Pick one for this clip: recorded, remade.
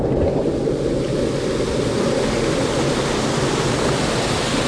recorded